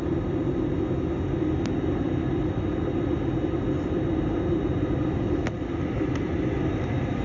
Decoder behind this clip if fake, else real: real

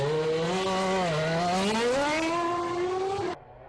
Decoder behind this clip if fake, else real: real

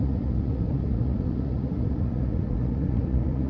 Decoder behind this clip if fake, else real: fake, vocoder, Vocos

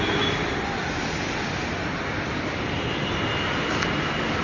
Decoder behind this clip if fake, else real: real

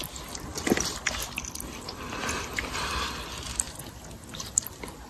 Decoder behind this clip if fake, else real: real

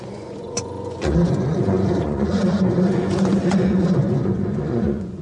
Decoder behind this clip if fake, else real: fake, vocoder, Vocos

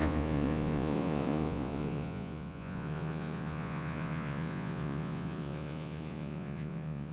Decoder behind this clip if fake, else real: fake, vocoder, Vocos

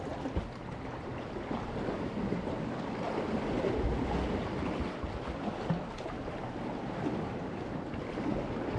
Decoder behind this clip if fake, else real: real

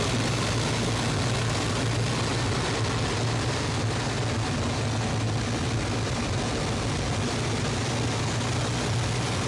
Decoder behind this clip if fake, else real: real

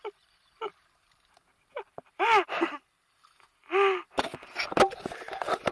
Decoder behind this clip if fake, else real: real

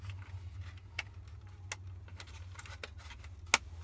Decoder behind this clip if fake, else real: real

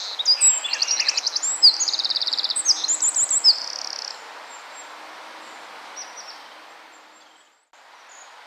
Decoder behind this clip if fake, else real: real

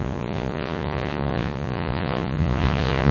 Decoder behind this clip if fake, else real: fake, vocoder, Vocos